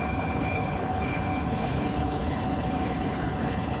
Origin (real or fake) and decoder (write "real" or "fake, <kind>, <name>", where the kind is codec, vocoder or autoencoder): fake, codec, HILCodec